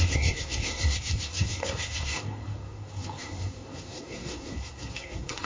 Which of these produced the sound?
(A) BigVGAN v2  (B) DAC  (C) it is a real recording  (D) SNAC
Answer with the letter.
D